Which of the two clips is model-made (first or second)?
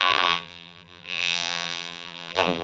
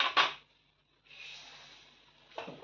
first